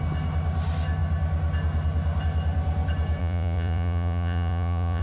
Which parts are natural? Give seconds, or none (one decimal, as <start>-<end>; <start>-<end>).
0.0-3.2